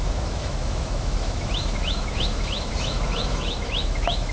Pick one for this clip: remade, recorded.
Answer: remade